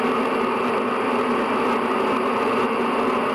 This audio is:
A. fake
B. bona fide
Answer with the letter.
B